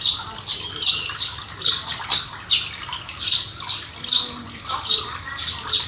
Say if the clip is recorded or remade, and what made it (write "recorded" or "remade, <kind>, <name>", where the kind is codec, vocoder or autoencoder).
recorded